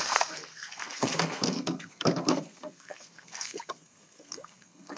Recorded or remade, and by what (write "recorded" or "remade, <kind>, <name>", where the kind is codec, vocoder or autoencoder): remade, codec, SNAC